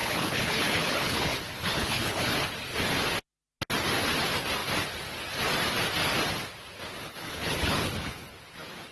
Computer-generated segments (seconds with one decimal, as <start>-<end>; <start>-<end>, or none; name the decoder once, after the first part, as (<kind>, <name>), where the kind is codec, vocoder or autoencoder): 0.0-2.3 (codec, HILCodec); 7.0-8.3